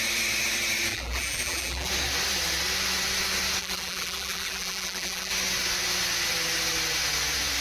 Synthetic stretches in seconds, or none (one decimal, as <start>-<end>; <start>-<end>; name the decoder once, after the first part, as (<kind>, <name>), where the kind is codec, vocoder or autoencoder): 0.9-1.9 (vocoder, BigVGAN v2); 3.6-5.3